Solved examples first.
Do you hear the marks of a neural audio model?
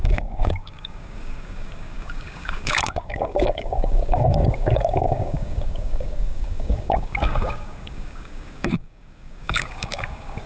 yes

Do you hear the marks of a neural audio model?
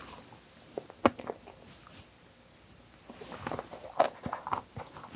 no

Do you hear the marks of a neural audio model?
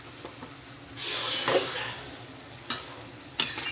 no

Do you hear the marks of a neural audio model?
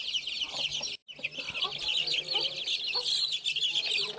no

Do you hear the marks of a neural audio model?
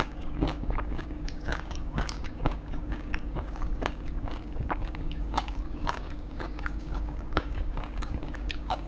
yes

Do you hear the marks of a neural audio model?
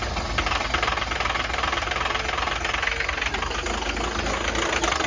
no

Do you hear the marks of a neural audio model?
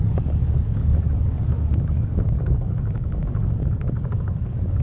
yes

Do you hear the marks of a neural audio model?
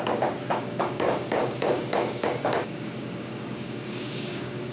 yes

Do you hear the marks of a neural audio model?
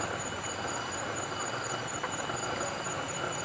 no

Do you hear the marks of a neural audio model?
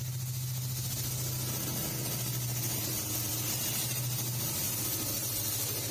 no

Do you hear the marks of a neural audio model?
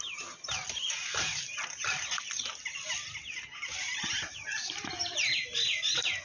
no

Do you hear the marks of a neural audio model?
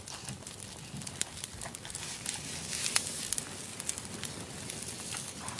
no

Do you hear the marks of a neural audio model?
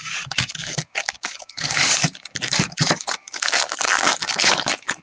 yes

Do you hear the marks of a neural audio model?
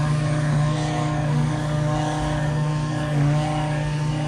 yes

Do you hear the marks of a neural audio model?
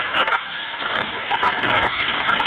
yes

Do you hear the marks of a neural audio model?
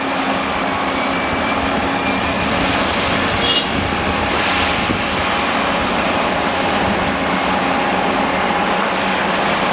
no